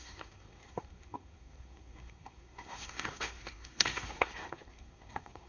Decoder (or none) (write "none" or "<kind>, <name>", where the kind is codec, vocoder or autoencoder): codec, SNAC